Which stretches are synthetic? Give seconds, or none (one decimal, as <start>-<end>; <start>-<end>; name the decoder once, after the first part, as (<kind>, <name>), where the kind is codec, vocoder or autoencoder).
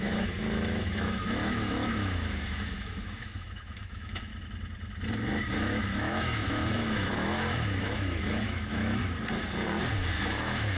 0.0-4.3 (autoencoder, DAC-VAE); 5.5-9.0; 10.1-10.8